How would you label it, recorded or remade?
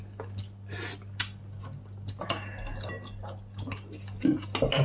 recorded